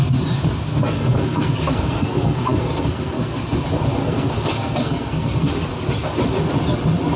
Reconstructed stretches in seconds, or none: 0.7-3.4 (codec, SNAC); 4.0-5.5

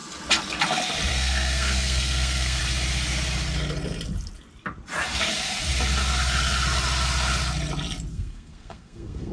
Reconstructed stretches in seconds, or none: 1.1-2.6 (codec, SNAC); 8.1-9.3

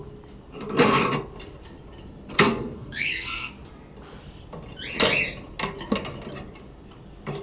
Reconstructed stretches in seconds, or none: 2.3-3.5 (codec, SNAC)

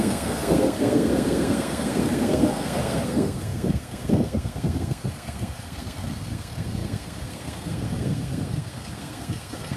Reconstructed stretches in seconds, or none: 0.0-9.8 (codec, SNAC)

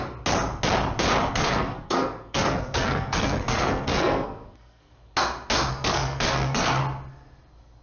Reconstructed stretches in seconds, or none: 1.2-4.9 (codec, SNAC); 5.7-6.8

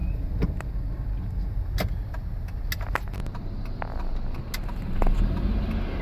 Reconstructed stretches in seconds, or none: none

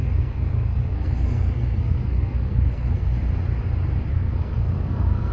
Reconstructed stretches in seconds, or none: 0.0-3.2 (codec, SNAC); 4.1-5.3